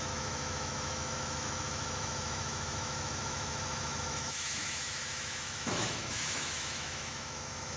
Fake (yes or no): yes